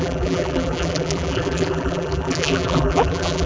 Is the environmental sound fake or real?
fake